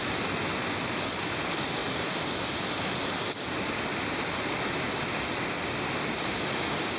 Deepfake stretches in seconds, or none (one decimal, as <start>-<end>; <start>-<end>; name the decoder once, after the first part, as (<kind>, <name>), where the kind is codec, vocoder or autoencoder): none